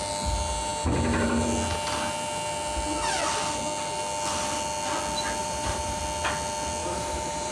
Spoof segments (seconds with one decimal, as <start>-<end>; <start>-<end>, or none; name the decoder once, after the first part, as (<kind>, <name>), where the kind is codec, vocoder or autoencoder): 5.4-6.0 (vocoder, BigVGAN v2); 6.8-7.5

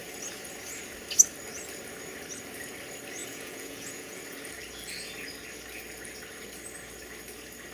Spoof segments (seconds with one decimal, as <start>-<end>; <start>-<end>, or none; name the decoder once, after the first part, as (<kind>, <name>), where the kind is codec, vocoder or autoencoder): 3.2-4.2 (vocoder, Vocos)

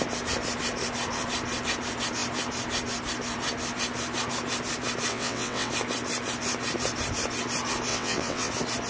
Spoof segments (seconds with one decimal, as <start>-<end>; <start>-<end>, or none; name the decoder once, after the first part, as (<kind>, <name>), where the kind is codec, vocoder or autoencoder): 5.1-5.7 (vocoder, WaveNeXt); 7.9-8.5

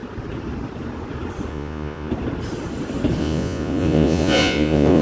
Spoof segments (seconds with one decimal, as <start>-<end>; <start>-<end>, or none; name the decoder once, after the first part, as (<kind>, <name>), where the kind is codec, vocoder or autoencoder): 1.5-2.1 (vocoder, Vocos); 3.2-5.0

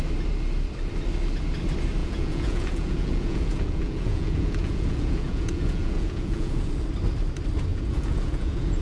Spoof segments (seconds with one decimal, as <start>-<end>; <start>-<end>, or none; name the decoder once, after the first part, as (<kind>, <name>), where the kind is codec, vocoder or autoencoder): 2.0-6.7 (vocoder, Vocos); 7.7-8.8